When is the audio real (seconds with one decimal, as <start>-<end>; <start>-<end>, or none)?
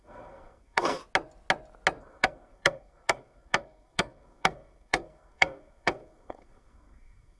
1.0-2.0